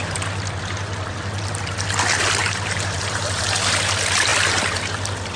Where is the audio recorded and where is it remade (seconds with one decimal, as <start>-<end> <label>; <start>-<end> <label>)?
0.0-2.4 recorded; 2.4-3.4 remade; 3.4-5.4 recorded